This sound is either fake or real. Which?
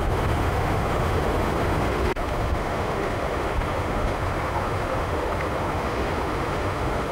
fake